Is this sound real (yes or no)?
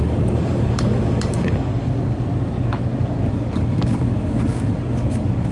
no